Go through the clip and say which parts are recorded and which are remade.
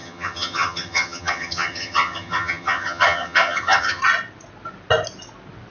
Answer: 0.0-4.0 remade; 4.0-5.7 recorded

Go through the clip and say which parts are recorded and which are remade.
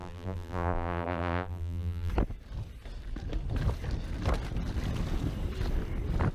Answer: 0.0-2.1 remade; 2.1-6.3 recorded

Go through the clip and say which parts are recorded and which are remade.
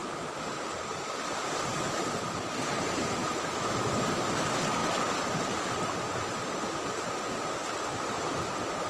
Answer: 0.0-3.2 recorded; 3.2-3.9 remade; 3.9-8.9 recorded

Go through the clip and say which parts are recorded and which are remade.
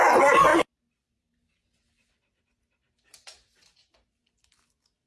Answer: 0.0-0.5 recorded; 0.5-3.6 remade; 3.6-5.1 recorded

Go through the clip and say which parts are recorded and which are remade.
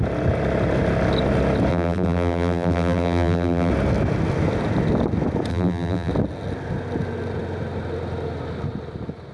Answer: 0.0-1.7 recorded; 1.7-3.7 remade; 3.7-5.5 recorded; 5.5-6.1 remade; 6.1-9.3 recorded